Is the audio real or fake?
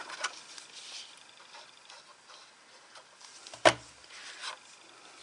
real